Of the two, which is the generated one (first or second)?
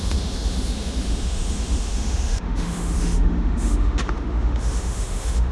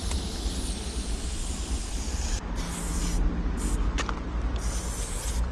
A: first